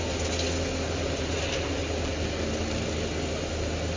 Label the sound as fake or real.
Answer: real